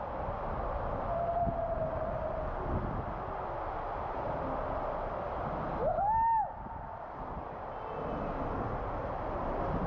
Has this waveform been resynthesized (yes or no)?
no